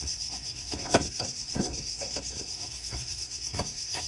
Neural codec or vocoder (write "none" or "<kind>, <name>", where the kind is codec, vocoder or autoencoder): codec, SNAC